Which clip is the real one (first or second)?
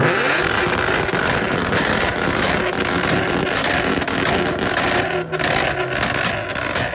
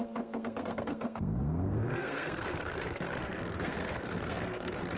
first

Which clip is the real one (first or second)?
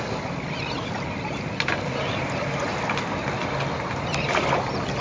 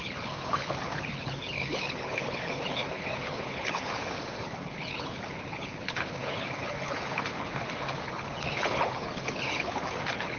first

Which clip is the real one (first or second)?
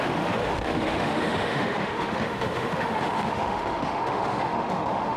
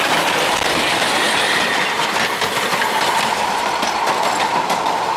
second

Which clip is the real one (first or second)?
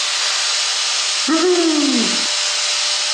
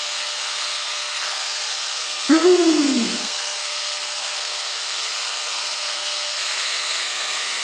first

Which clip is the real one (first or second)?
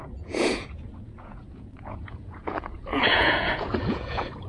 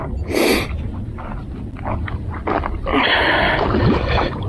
second